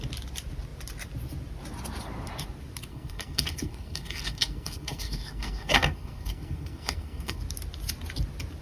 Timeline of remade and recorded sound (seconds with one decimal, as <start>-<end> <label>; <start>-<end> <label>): 0.0-2.9 recorded; 2.9-7.4 remade; 7.4-8.6 recorded